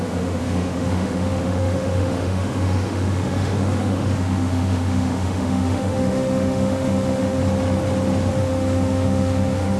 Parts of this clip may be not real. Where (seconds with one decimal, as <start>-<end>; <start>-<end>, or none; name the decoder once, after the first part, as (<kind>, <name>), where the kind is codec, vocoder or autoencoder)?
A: 0.0-7.4 (autoencoder, DAC-VAE); 8.4-9.8

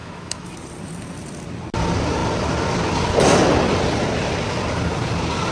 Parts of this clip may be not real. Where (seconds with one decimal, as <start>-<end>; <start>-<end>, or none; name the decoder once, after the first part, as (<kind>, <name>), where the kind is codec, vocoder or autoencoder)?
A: 0.0-0.5 (autoencoder, DAC-VAE)

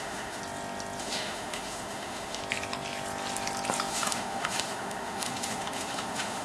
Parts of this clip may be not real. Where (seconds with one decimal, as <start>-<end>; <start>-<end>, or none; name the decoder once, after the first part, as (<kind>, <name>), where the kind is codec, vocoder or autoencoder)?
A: 0.0-0.4 (autoencoder, DAC-VAE); 1.0-2.4; 3.9-6.4

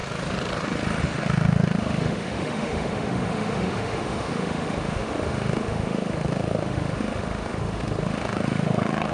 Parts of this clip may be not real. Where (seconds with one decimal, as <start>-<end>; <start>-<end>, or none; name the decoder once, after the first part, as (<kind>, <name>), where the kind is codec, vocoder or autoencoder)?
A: 1.0-9.1 (autoencoder, DAC-VAE)

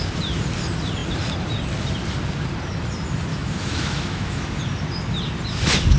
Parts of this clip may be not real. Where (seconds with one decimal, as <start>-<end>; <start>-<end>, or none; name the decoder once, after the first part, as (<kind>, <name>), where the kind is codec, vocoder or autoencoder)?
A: 3.3-4.6 (autoencoder, DAC-VAE)

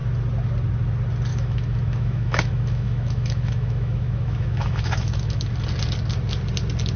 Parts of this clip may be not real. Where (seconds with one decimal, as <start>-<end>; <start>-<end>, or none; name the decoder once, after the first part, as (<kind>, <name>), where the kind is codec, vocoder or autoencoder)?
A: 1.3-5.5 (autoencoder, DAC-VAE)

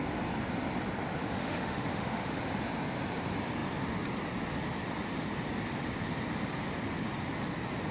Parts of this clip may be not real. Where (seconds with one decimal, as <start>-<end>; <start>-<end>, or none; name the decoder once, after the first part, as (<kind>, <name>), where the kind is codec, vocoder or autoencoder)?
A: 1.2-2.4 (autoencoder, DAC-VAE)

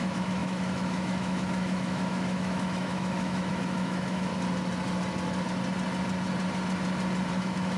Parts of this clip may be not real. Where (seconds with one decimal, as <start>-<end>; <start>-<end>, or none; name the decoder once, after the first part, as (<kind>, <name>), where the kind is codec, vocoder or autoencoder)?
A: 0.0-4.3 (autoencoder, DAC-VAE); 7.3-7.8